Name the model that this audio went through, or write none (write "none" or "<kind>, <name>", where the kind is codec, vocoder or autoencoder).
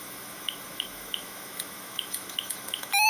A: autoencoder, DAC-VAE